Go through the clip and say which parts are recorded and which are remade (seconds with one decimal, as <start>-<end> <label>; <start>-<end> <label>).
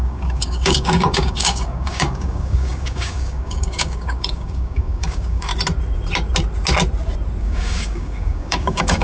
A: 0.0-5.5 remade; 5.5-7.4 recorded; 7.4-9.0 remade